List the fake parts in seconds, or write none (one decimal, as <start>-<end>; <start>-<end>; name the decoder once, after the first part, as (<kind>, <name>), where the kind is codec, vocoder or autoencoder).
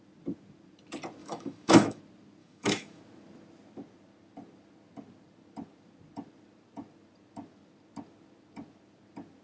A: 1.2-2.0 (autoencoder, DAC-VAE); 2.4-3.0